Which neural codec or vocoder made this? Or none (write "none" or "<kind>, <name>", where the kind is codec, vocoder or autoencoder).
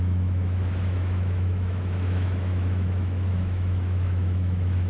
autoencoder, DAC-VAE